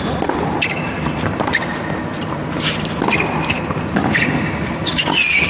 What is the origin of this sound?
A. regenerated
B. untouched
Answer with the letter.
B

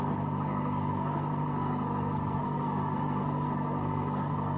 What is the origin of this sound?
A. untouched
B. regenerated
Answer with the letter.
B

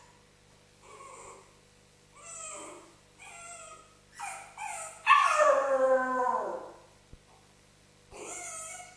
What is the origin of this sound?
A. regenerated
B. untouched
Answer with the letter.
B